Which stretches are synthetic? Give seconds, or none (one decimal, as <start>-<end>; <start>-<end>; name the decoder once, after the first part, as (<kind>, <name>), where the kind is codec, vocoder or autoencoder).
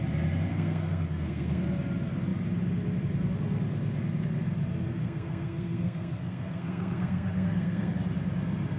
0.5-1.6 (codec, SNAC); 5.0-7.9